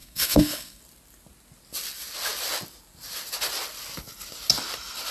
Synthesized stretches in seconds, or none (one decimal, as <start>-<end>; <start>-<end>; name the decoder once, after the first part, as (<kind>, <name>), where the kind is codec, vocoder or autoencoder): 0.0-0.8 (codec, SNAC)